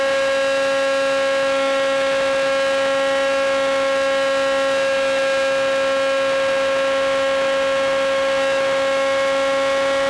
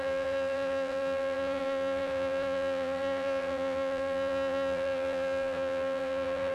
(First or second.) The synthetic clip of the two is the second